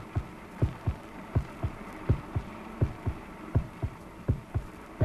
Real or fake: fake